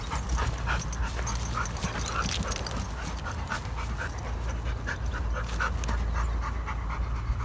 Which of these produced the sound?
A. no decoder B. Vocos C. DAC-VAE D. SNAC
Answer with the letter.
A